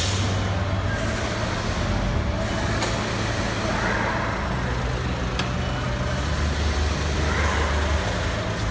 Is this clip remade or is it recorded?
recorded